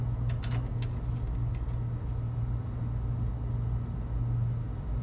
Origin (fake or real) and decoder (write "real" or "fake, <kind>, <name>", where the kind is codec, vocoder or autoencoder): real